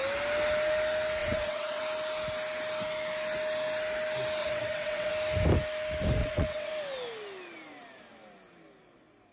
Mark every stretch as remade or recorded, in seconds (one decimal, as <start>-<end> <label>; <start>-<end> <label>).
0.0-1.2 recorded; 1.2-1.8 remade; 1.8-4.4 recorded; 4.4-5.1 remade; 5.1-6.2 recorded; 6.2-6.7 remade; 6.7-9.3 recorded